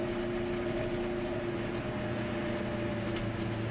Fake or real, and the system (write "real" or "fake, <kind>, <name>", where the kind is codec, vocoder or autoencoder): real